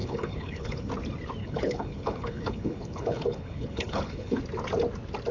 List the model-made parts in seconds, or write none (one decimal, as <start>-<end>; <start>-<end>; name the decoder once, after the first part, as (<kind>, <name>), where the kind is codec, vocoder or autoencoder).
0.0-0.9 (codec, HILCodec); 1.4-4.4